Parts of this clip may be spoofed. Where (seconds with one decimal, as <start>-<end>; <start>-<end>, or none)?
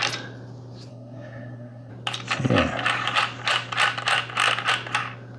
0.9-1.9